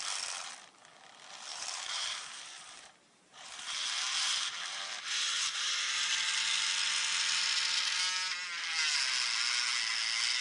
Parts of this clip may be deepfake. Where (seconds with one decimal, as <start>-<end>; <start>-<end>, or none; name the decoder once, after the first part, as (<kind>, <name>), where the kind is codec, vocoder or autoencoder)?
1.5-6.1 (vocoder, BigVGAN v2)